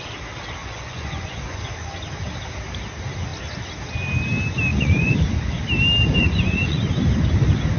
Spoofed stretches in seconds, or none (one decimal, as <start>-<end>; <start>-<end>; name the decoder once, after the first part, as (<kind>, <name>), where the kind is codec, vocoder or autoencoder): 0.6-1.6 (vocoder, Vocos); 4.7-5.6; 6.2-6.8